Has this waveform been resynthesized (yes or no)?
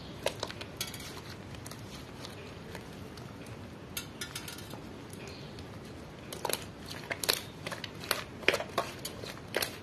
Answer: no